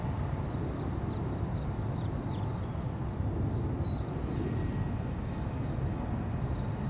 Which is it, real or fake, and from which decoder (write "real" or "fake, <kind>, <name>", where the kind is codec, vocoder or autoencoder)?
real